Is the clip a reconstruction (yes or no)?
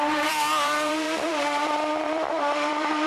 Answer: yes